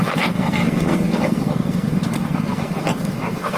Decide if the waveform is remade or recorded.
remade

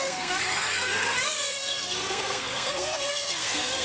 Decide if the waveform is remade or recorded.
remade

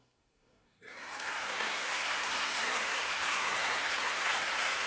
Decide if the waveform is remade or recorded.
remade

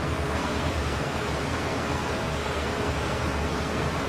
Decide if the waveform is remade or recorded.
remade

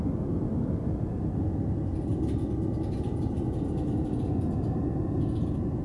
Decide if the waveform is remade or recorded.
recorded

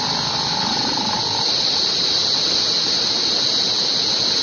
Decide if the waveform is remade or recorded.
recorded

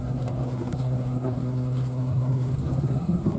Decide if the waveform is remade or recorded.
remade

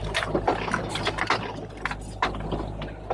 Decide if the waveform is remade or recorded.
recorded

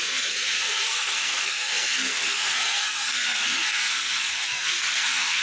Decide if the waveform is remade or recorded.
remade